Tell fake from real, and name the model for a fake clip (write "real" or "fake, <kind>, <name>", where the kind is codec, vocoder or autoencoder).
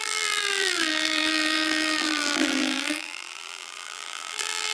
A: fake, vocoder, BigVGAN v2